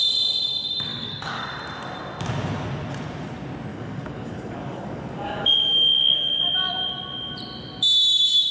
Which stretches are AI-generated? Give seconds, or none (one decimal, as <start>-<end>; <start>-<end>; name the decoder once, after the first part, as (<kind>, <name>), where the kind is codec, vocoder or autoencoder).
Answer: 0.9-1.4 (codec, DAC); 3.7-6.4